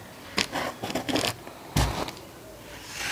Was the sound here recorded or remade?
recorded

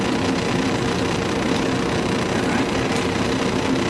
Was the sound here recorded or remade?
recorded